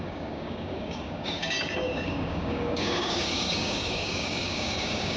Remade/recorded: remade